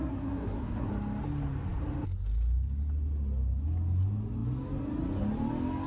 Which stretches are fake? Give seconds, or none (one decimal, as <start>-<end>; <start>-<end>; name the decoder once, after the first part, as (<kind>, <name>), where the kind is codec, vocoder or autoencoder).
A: 0.0-0.9 (codec, SNAC)